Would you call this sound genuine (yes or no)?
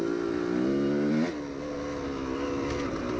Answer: yes